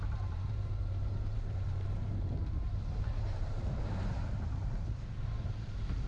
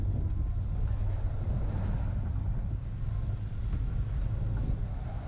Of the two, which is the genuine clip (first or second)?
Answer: second